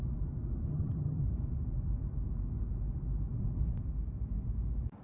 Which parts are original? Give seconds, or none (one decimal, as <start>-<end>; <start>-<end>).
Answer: 0.0-0.7; 1.2-5.0